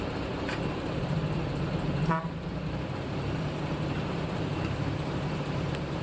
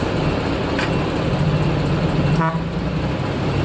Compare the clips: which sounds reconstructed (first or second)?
first